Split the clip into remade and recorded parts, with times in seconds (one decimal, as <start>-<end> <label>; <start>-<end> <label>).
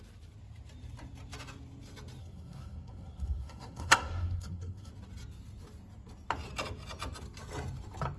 0.0-2.2 recorded; 2.2-4.9 remade; 4.9-8.2 recorded